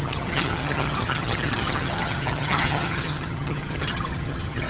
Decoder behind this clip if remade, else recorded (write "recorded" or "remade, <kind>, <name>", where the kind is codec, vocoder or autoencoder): remade, vocoder, HiFi-GAN